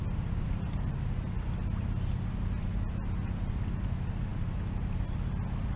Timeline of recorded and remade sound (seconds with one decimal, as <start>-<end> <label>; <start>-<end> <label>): 0.0-5.8 recorded